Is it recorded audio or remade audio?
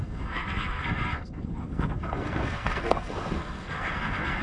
remade